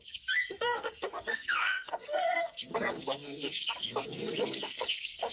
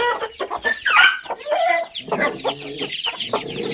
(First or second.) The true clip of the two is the second